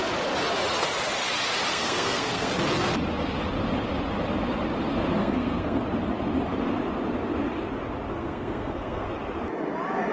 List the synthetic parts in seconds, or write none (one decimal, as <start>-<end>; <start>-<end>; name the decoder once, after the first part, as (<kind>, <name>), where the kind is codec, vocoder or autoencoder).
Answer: 1.7-2.5 (codec, SNAC); 5.2-5.8; 8.1-9.1